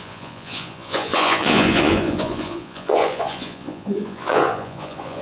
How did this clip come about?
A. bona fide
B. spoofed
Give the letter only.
B